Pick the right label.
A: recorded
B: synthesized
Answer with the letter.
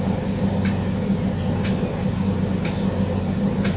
A